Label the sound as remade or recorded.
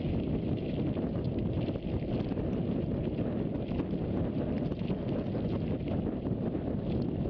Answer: recorded